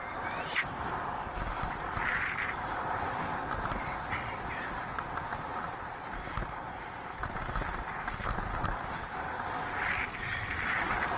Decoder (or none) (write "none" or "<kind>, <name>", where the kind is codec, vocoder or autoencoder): none